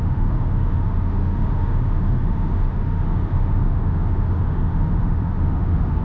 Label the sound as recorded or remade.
remade